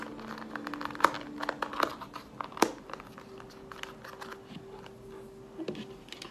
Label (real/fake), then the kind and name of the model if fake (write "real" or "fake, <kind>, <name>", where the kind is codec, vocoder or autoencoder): real